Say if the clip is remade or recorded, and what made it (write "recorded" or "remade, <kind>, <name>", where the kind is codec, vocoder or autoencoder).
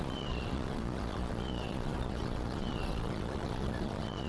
remade, vocoder, Vocos